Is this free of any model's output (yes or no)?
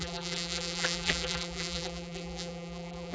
no